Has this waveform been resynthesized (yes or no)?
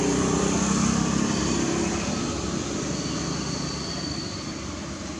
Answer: no